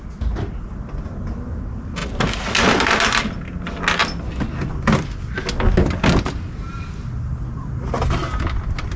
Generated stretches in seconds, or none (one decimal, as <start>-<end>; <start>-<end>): none

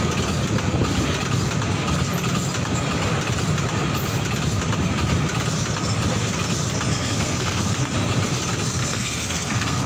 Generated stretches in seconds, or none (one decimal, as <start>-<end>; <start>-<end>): 6.9-7.7; 8.8-9.9